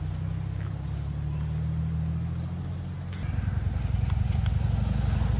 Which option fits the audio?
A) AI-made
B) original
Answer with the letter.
B